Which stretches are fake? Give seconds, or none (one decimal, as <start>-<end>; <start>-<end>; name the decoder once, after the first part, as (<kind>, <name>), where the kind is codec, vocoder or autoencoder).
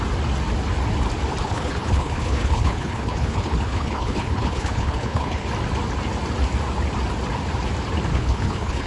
1.4-5.5 (codec, HILCodec); 8.1-8.9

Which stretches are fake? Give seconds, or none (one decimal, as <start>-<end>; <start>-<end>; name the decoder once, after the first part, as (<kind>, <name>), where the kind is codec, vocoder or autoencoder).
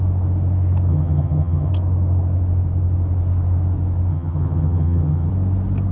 0.9-1.7 (vocoder, HiFi-GAN); 4.1-5.3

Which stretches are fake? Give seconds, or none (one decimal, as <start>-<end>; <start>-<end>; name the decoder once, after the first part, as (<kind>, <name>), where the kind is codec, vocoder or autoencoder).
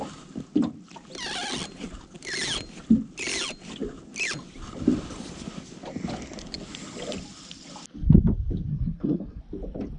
8.7-9.4 (codec, SNAC)